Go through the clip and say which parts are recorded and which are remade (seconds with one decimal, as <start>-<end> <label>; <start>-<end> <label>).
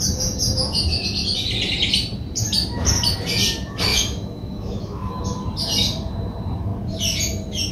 0.0-3.9 recorded; 3.9-5.2 remade; 5.2-7.7 recorded